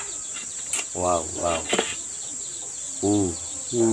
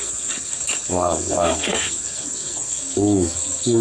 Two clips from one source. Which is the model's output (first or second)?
second